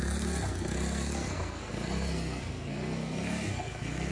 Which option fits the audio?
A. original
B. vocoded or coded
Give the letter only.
B